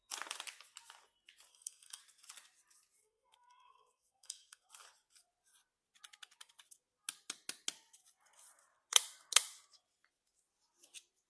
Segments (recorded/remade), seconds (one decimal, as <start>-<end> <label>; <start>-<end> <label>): 0.0-1.5 recorded; 1.5-2.0 remade; 2.0-3.0 recorded; 3.0-4.7 remade; 4.7-11.3 recorded